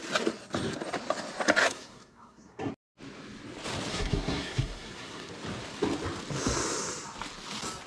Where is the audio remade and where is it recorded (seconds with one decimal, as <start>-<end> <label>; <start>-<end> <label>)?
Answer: 0.0-1.6 recorded; 1.6-2.7 remade; 2.7-3.9 recorded; 3.9-5.3 remade; 5.3-7.9 recorded